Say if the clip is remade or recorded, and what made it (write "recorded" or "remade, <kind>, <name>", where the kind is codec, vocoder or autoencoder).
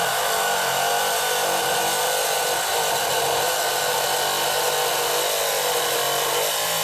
recorded